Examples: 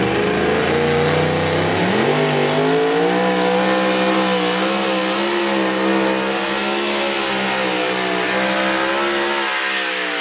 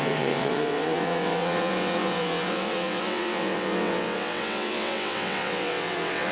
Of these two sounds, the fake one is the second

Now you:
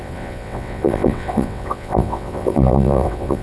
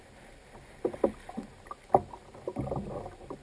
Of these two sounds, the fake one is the first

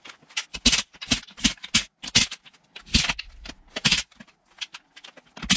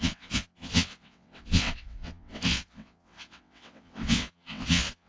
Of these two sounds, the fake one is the second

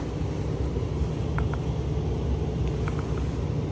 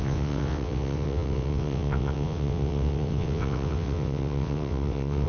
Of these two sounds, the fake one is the second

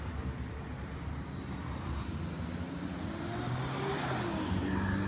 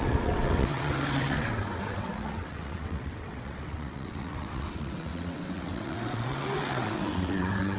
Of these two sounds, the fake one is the second